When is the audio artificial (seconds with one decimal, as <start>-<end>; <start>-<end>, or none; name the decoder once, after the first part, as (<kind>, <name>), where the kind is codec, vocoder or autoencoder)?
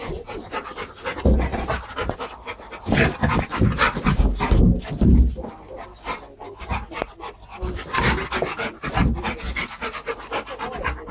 none